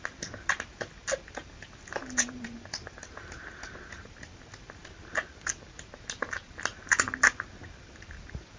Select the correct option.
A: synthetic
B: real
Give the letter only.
B